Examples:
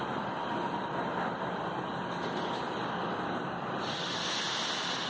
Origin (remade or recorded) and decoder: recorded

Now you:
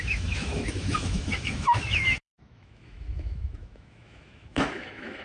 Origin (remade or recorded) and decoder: remade, autoencoder, DAC-VAE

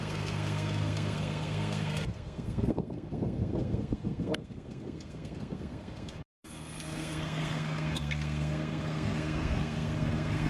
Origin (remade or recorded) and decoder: remade, codec, SNAC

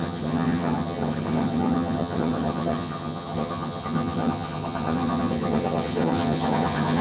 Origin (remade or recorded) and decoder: remade, vocoder, HiFi-GAN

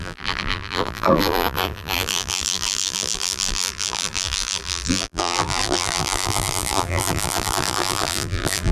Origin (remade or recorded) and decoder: remade, vocoder, BigVGAN v2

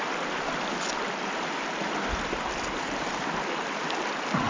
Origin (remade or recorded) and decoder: recorded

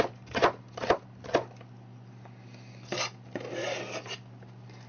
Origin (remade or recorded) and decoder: recorded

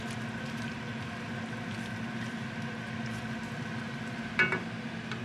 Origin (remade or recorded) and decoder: recorded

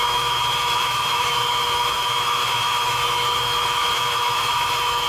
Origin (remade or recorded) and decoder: remade, autoencoder, DAC-VAE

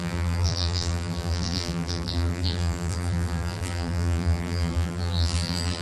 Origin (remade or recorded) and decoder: remade, vocoder, BigVGAN v2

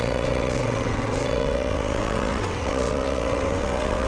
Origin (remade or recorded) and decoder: remade, vocoder, WaveNeXt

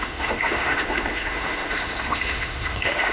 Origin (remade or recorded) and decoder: remade, autoencoder, DAC-VAE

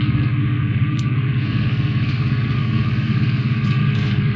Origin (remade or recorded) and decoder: remade, codec, SNAC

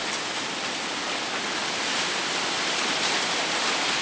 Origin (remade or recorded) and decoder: recorded